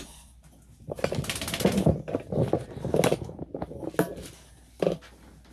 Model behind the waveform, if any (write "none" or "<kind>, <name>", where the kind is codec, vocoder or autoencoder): none